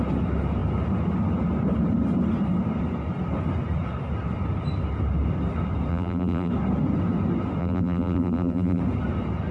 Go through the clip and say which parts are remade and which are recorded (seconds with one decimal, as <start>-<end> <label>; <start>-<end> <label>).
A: 0.0-5.9 recorded; 5.9-6.5 remade; 6.5-7.6 recorded; 7.6-8.8 remade; 8.8-9.5 recorded